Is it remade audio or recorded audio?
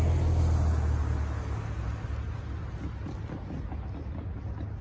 recorded